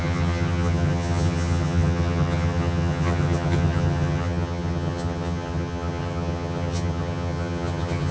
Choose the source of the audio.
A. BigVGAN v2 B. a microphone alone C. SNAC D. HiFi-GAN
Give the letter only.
D